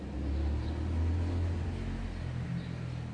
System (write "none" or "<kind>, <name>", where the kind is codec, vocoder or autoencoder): none